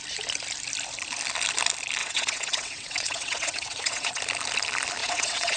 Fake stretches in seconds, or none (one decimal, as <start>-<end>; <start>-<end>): 2.0-4.2; 5.0-5.6